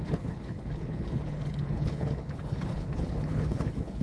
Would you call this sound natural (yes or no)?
no